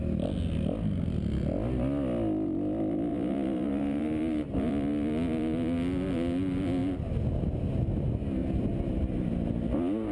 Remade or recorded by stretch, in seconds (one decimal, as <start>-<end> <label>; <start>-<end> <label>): 0.0-3.1 recorded; 3.1-4.7 remade; 4.7-8.4 recorded; 8.4-9.0 remade; 9.0-10.1 recorded